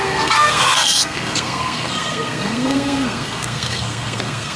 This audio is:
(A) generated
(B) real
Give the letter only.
A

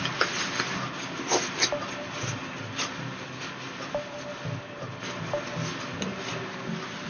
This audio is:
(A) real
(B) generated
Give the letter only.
A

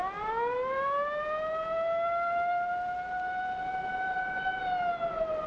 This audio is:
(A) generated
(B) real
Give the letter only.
B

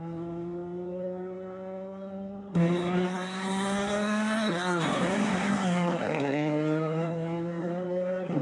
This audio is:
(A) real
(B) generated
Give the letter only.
B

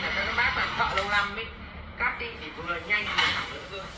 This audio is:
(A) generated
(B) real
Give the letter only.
A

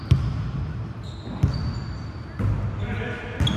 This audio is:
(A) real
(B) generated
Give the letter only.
A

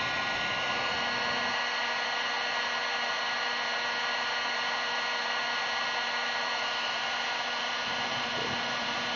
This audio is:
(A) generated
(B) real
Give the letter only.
B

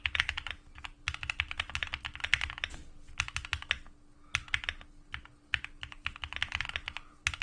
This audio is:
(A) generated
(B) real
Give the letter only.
B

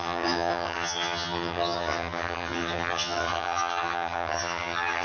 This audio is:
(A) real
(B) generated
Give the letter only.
B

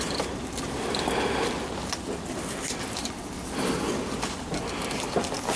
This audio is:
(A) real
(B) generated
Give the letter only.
B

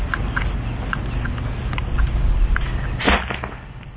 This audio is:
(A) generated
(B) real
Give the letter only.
B